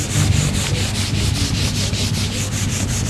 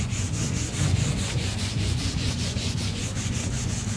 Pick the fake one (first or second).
second